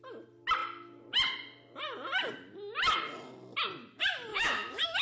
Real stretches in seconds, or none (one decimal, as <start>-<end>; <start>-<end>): 0.0-4.3